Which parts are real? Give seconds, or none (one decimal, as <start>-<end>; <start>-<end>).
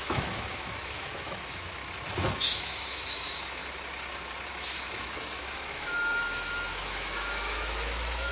1.8-2.5; 3.6-4.5